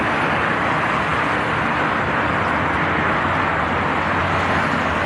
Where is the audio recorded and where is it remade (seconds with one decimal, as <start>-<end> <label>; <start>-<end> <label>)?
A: 0.0-5.1 recorded